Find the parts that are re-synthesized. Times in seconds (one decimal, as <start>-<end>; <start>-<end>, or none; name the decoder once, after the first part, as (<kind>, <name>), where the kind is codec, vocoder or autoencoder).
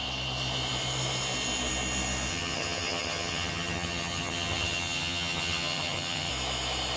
2.3-6.3 (vocoder, HiFi-GAN)